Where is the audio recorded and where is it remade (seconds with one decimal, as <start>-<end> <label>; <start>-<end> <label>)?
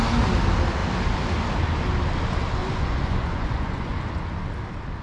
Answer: 0.0-2.6 recorded; 2.6-3.9 remade; 3.9-5.0 recorded